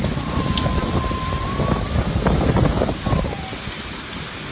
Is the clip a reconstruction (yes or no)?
no